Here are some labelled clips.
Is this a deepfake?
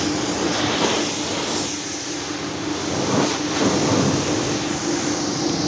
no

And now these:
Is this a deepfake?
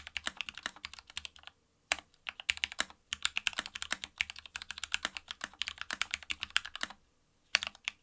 no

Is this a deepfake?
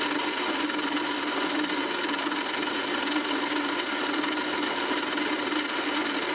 no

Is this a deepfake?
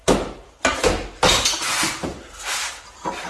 no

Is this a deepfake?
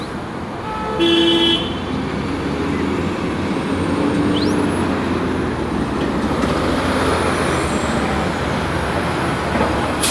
no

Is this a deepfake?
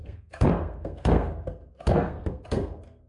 yes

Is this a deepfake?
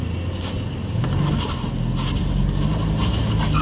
no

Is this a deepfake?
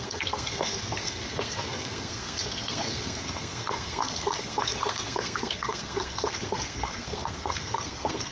yes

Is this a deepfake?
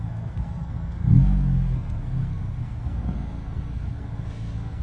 yes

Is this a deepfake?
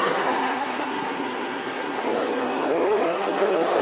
yes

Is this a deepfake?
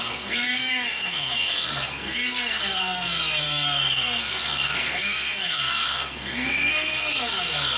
yes